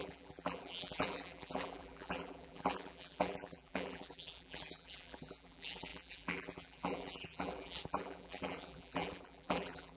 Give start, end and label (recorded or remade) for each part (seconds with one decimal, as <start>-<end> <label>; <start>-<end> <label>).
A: 0.0-10.0 remade